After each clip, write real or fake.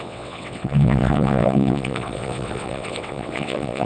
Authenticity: fake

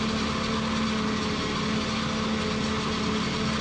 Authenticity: real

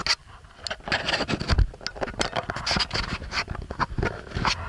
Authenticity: real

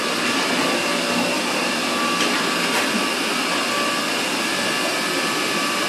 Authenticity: real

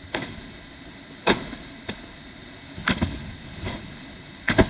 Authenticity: fake